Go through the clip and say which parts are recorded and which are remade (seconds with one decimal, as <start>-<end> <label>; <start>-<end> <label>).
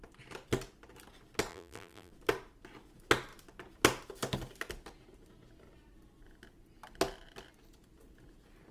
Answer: 0.0-1.5 recorded; 1.5-2.1 remade; 2.1-8.7 recorded